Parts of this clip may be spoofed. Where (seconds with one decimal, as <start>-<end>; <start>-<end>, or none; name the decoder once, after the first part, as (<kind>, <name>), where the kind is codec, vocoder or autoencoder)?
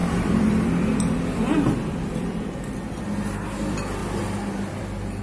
0.0-3.1 (vocoder, BigVGAN v2)